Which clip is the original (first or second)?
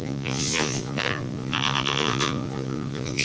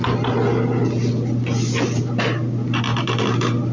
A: second